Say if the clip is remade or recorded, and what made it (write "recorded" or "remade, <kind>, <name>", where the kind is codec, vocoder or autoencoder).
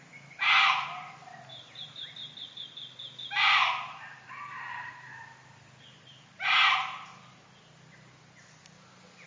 recorded